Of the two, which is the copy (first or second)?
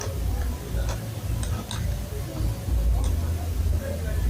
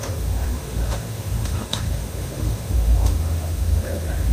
second